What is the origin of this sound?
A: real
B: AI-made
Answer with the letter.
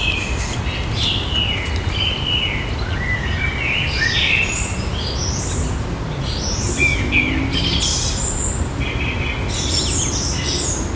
A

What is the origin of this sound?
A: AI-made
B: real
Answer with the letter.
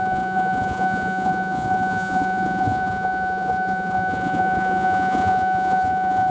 A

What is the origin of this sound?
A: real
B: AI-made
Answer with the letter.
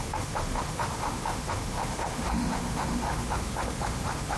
B